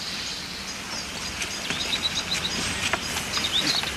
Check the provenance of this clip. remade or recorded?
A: recorded